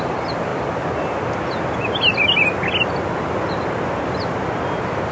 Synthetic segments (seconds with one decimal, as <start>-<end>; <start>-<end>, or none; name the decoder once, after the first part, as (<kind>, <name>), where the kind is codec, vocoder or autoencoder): none